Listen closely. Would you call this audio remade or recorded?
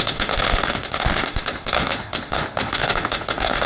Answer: remade